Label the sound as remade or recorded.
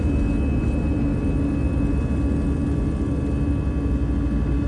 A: recorded